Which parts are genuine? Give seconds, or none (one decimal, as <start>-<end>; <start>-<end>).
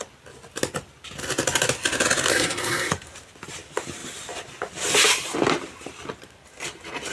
0.0-2.3; 2.9-7.1